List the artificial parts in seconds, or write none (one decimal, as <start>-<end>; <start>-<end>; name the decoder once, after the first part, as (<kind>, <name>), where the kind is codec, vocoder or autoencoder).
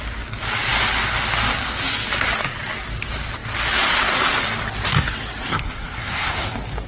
5.5-6.5 (codec, SNAC)